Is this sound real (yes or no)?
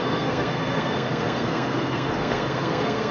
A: no